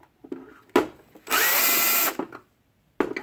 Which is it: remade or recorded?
recorded